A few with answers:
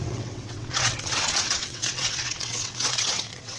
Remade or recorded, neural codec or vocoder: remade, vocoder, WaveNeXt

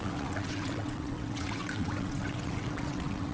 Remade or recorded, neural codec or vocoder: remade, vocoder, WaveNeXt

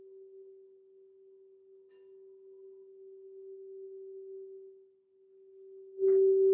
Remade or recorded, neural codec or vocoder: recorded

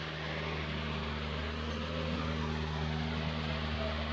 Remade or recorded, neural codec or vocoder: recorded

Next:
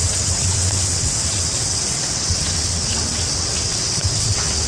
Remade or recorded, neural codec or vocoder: remade, vocoder, WaveNeXt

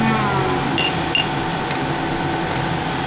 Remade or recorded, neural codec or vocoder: recorded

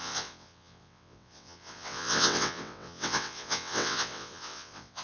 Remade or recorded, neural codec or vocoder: remade, vocoder, WaveNeXt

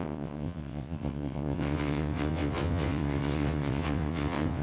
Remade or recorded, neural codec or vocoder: remade, vocoder, WaveNeXt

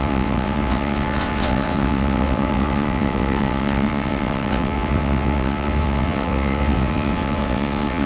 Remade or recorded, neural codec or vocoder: remade, vocoder, WaveNeXt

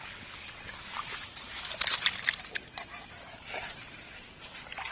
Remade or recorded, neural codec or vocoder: recorded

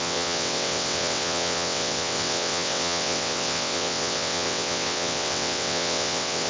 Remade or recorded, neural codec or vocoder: remade, vocoder, WaveNeXt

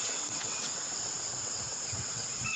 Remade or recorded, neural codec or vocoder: remade, vocoder, WaveNeXt